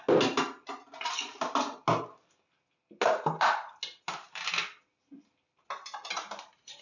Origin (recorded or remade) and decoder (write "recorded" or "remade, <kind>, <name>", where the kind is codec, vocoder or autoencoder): recorded